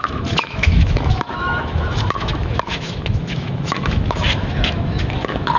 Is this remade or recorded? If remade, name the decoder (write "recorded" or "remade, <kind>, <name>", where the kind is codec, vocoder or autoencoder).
remade, autoencoder, DAC-VAE